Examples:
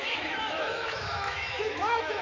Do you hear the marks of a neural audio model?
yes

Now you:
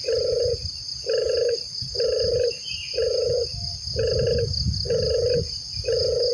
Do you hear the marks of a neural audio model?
no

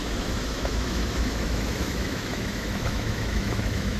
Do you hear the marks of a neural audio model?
yes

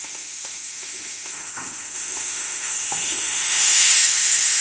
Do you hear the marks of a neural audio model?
yes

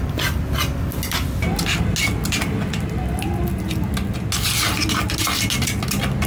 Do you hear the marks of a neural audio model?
no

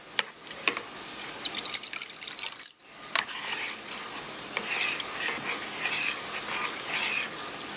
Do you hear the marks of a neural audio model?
no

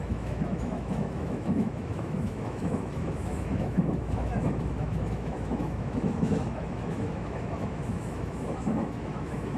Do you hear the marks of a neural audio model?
yes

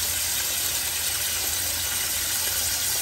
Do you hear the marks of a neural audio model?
no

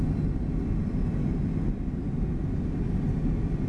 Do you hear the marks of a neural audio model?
no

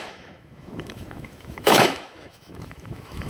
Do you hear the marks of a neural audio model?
yes